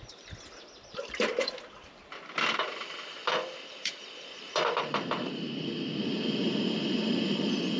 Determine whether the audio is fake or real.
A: fake